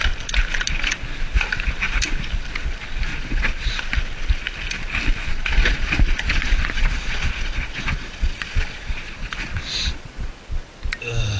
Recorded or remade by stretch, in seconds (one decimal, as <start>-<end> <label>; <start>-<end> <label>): 0.0-3.1 recorded; 3.1-3.8 remade; 3.8-5.3 recorded; 5.3-10.3 remade; 10.3-11.4 recorded